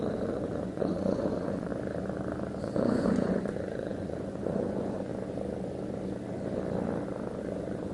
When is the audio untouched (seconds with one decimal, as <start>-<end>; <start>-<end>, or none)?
1.7-2.6; 5.1-7.4